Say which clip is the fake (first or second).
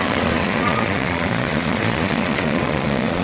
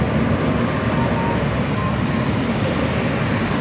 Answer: first